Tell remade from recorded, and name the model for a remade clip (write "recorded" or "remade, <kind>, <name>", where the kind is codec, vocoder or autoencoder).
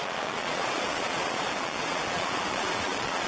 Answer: remade, vocoder, Vocos